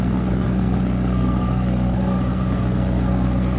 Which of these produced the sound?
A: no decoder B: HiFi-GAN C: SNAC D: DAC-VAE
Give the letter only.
C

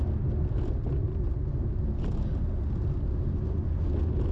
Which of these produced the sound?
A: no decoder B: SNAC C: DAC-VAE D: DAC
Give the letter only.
A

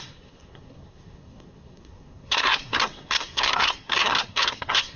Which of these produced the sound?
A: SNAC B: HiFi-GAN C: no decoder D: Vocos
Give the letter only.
A